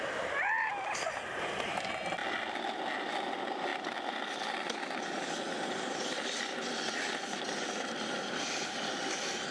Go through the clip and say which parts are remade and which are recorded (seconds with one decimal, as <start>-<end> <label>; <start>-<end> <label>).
0.0-9.5 recorded